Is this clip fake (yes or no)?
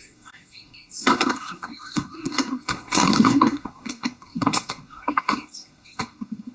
yes